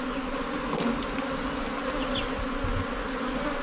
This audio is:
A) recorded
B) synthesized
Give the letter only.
A